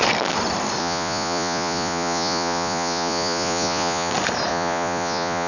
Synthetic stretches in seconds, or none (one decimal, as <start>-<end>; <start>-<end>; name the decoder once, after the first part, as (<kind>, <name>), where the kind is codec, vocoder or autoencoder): 0.8-4.1 (vocoder, Vocos); 4.5-5.5